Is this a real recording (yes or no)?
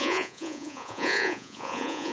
no